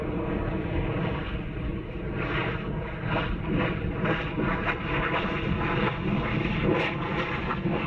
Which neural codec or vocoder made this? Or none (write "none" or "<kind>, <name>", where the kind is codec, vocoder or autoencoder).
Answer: none